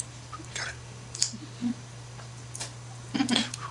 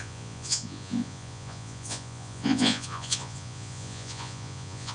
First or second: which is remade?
second